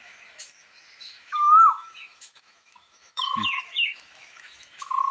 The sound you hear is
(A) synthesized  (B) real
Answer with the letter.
A